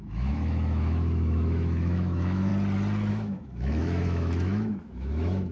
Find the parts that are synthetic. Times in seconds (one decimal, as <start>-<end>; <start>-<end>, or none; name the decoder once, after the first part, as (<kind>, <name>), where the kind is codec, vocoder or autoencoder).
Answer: 0.0-2.5 (autoencoder, DAC-VAE); 3.1-5.5